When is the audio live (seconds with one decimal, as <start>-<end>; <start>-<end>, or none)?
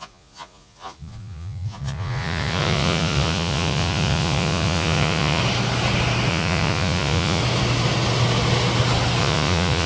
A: 5.4-6.3; 7.4-9.2